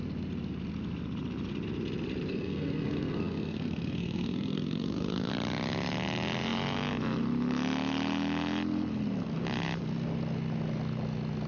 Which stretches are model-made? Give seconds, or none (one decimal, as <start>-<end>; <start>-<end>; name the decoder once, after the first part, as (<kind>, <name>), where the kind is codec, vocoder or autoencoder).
2.3-5.3 (codec, SNAC)